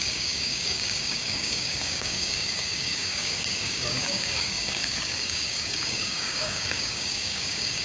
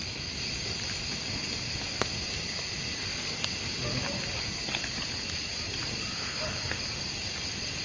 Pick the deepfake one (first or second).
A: first